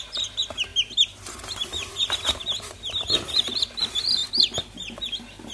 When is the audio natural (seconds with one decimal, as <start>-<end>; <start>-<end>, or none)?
0.7-2.3; 4.2-5.5